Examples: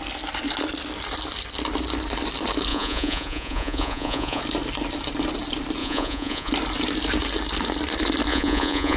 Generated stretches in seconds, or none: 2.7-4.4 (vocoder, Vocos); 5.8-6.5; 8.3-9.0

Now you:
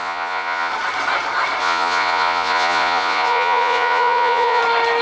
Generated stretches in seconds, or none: 0.0-0.7 (vocoder, Vocos); 1.6-4.6

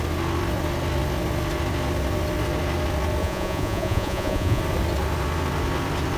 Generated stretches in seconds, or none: 3.2-4.6 (vocoder, Vocos)

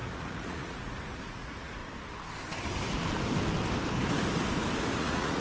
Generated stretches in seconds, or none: 0.0-1.8 (vocoder, Vocos); 5.0-5.4

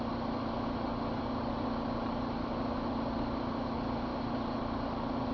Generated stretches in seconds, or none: none